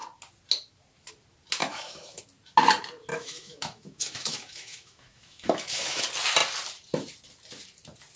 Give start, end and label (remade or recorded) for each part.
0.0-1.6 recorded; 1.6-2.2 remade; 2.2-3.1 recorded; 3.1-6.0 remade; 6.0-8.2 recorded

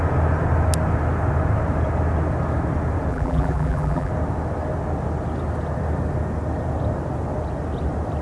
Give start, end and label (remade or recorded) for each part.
0.0-3.1 recorded; 3.1-4.1 remade; 4.1-8.2 recorded

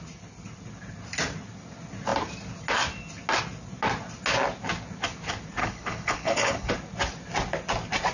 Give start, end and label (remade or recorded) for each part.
0.0-5.6 recorded; 5.6-6.7 remade; 6.7-8.1 recorded

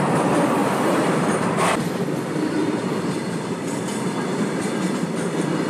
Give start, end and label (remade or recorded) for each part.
0.0-5.7 recorded